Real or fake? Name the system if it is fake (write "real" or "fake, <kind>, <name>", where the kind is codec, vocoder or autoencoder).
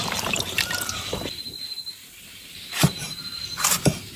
fake, vocoder, BigVGAN v2